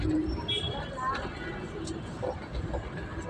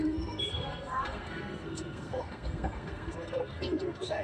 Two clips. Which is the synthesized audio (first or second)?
second